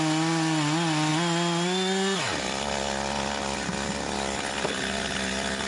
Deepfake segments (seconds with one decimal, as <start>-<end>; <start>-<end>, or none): none

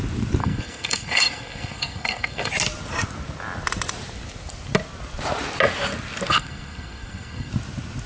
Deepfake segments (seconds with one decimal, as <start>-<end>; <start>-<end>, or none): 0.4-2.5; 6.3-7.5

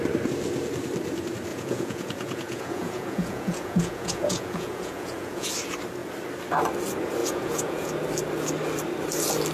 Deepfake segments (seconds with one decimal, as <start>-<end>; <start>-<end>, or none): 1.5-5.5; 7.2-7.9

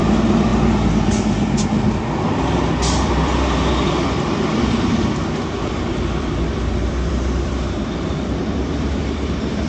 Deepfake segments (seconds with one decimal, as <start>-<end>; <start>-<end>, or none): 0.0-0.5; 2.7-9.7

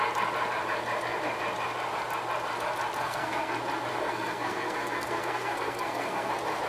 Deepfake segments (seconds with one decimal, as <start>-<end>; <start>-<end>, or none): 3.0-3.5; 3.9-6.3

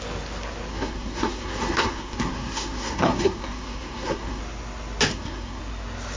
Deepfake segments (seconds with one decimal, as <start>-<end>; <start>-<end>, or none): 0.7-4.4; 5.1-5.6

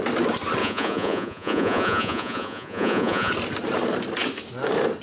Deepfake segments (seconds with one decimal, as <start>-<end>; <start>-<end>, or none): 0.6-3.3

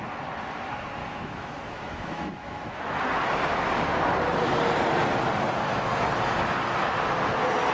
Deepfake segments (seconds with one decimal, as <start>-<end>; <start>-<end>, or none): 1.0-2.9